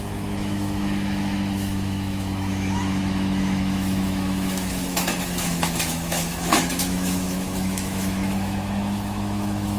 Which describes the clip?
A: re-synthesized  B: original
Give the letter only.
A